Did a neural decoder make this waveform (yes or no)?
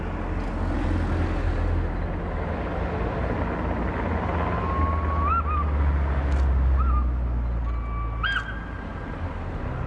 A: no